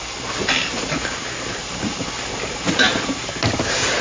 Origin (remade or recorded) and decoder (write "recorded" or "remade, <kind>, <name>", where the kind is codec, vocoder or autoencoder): recorded